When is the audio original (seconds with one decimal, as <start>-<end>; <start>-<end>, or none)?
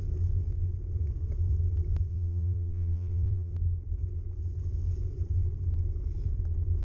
0.0-2.1; 3.5-6.8